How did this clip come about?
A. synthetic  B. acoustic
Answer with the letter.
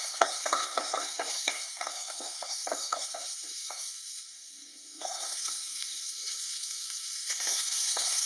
A